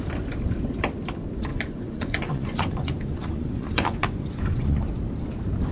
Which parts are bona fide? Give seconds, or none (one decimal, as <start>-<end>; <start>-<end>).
0.0-1.5; 4.9-5.7